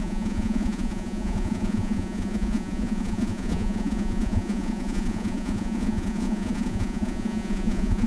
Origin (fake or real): fake